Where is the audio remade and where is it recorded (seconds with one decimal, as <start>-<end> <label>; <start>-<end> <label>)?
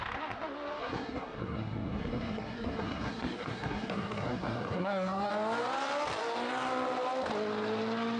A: 0.0-0.8 recorded; 0.8-5.3 remade; 5.3-8.2 recorded